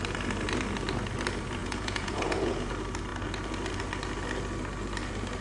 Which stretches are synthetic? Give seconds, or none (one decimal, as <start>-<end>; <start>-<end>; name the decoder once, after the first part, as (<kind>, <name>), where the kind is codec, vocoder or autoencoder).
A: 1.6-2.7 (vocoder, Vocos)